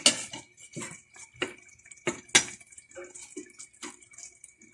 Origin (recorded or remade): recorded